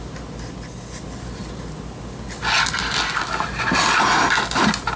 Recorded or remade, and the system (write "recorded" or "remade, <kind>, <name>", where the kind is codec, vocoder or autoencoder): recorded